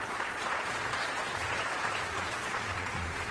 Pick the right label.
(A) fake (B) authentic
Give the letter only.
A